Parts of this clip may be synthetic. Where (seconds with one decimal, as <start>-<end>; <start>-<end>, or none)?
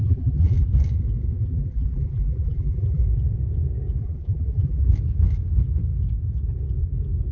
0.0-0.7; 1.4-3.0; 4.0-4.9